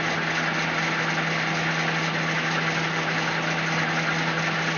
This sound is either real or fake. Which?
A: real